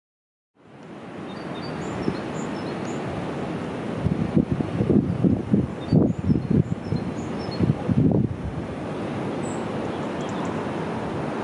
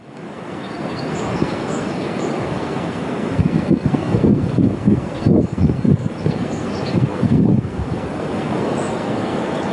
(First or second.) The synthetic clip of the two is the second